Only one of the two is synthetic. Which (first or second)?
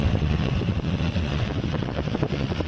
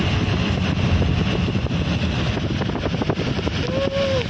first